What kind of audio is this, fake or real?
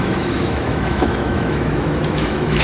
fake